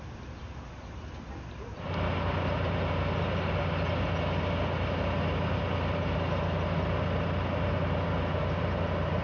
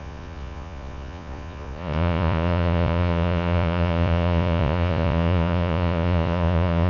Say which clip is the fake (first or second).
second